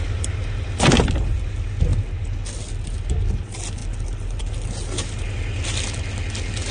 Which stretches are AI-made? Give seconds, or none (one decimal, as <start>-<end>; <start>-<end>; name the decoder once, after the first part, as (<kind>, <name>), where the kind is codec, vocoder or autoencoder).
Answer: none